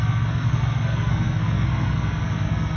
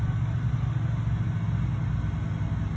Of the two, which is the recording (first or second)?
second